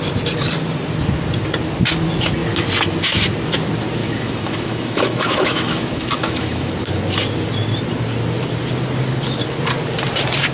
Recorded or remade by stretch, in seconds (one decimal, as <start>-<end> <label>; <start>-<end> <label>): 0.0-4.0 recorded; 4.0-6.7 remade; 6.7-10.5 recorded